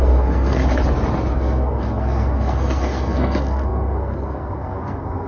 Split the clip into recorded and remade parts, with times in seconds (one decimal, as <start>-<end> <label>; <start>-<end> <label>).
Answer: 0.0-0.6 remade; 0.6-1.3 recorded; 1.3-5.3 remade